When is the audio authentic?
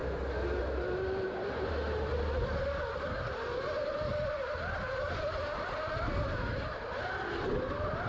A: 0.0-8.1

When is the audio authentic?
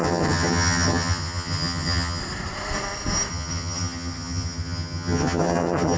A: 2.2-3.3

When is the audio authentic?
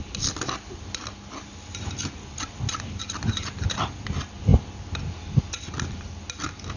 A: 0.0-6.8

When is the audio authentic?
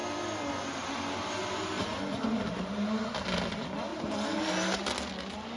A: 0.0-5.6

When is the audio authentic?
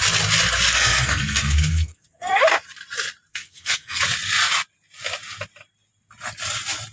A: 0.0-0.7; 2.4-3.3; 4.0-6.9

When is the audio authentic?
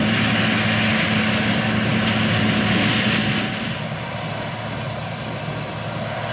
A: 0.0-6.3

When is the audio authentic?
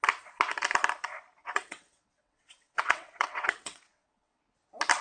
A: 0.0-1.4; 4.4-5.0